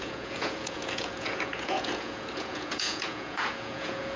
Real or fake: fake